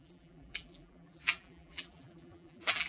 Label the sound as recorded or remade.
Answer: remade